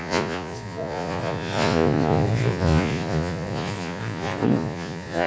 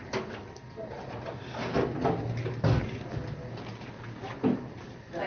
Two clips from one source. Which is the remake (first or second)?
first